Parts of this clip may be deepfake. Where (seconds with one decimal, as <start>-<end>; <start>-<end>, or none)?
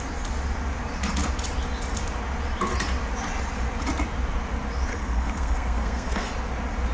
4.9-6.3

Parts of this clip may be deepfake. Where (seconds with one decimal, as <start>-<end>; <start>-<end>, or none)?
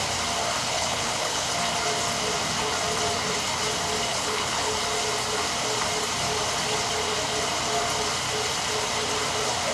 0.6-1.5; 4.1-4.8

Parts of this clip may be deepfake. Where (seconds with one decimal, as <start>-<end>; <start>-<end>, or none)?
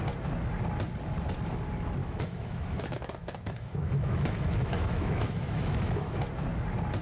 2.0-6.2